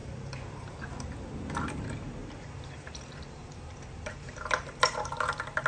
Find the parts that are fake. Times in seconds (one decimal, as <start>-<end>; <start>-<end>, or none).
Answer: 0.0-0.7; 2.2-5.1